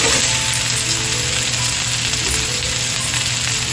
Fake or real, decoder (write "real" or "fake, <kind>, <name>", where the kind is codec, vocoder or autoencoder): real